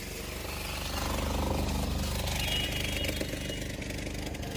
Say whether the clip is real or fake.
real